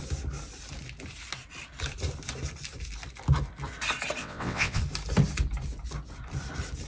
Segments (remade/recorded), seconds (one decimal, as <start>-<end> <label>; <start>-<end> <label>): 0.0-4.2 recorded; 4.2-4.8 remade; 4.8-6.9 recorded